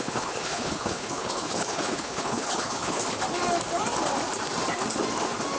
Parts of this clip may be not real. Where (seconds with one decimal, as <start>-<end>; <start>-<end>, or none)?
0.0-3.0